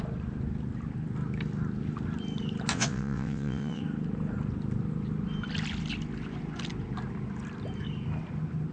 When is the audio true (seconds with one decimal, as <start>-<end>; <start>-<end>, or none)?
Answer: 0.0-2.7; 3.8-8.7